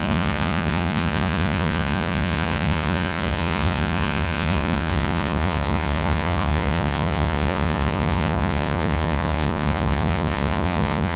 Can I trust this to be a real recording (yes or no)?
no